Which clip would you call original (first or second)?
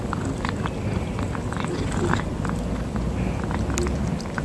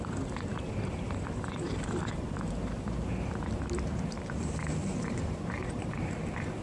first